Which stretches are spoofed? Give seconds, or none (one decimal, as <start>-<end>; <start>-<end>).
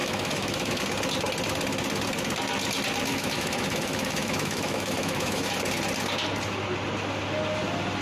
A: 0.0-0.8; 3.1-5.5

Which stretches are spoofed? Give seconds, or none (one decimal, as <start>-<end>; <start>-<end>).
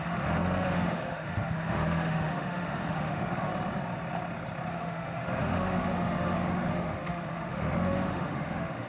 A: 0.0-3.5; 4.7-8.9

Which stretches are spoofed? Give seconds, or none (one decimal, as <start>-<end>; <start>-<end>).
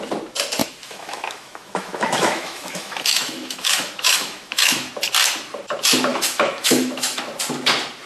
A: 0.6-4.9; 6.1-7.2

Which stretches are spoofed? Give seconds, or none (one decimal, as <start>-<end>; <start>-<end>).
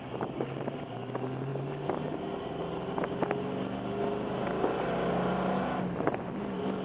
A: none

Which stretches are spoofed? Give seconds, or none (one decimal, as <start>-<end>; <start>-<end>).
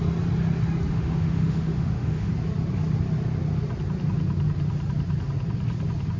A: 0.9-2.3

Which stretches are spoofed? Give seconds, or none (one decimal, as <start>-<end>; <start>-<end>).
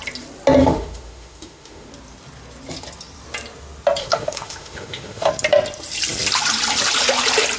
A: 0.6-1.9; 4.0-5.3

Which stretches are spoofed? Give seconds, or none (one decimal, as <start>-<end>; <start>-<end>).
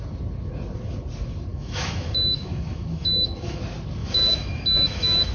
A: 1.5-3.6; 4.0-5.3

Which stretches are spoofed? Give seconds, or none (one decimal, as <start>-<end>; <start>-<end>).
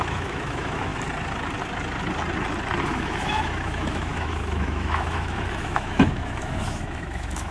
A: 0.0-0.9; 2.8-7.5